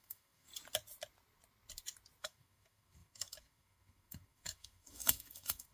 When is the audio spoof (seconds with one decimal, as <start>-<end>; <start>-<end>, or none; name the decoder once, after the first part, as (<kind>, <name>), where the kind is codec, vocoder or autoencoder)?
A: 0.0-0.5 (autoencoder, DAC-VAE); 2.2-5.7